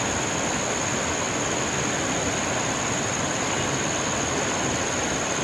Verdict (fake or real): real